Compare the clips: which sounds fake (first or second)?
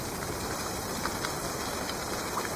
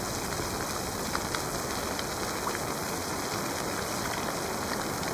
first